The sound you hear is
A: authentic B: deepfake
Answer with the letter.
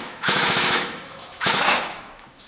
B